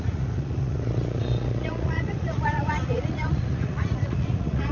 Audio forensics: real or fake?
fake